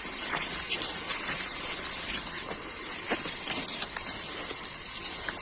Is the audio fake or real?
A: real